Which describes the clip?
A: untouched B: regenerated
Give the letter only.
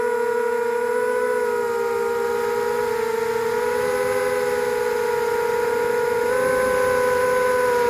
A